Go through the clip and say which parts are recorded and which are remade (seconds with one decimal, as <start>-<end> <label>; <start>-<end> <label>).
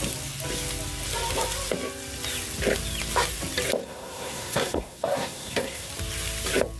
0.0-3.8 recorded; 3.8-5.9 remade; 5.9-6.8 recorded